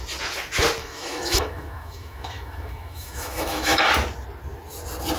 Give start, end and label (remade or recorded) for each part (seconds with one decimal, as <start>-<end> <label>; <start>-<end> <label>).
0.0-0.8 recorded; 0.8-3.9 remade; 3.9-5.2 recorded